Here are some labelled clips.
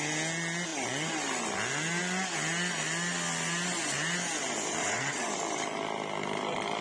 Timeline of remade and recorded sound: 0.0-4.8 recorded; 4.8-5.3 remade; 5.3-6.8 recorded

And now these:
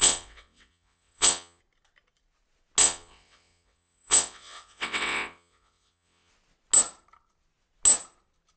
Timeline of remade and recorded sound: 0.0-1.6 remade; 1.6-2.8 recorded; 2.8-6.3 remade; 6.3-8.6 recorded

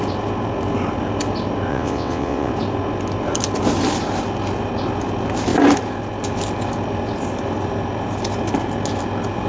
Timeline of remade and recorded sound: 0.0-1.7 recorded; 1.7-2.5 remade; 2.5-9.5 recorded

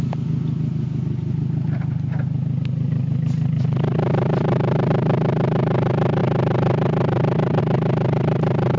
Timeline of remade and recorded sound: 0.0-8.8 recorded

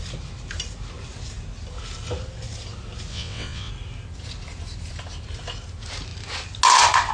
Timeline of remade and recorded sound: 0.0-3.1 recorded; 3.1-3.7 remade; 3.7-7.1 recorded

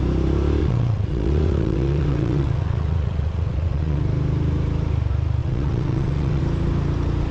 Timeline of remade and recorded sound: 0.0-0.6 recorded; 0.6-4.0 remade; 4.0-5.4 recorded; 5.4-6.4 remade; 6.4-7.3 recorded

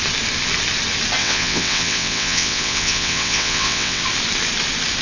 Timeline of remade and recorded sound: 0.0-1.2 recorded; 1.2-4.0 remade; 4.0-5.0 recorded

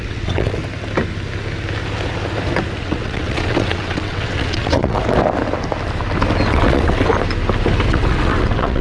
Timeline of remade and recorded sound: 0.0-0.6 remade; 0.6-2.8 recorded; 2.8-5.0 remade; 5.0-6.5 recorded; 6.5-7.1 remade; 7.1-7.9 recorded; 7.9-8.8 remade